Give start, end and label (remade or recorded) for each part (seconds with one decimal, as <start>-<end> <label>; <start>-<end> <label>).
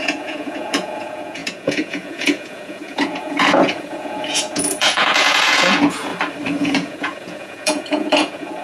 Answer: 0.0-6.1 remade; 6.1-6.6 recorded; 6.6-8.6 remade